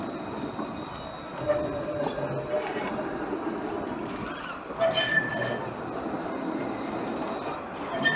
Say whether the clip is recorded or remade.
recorded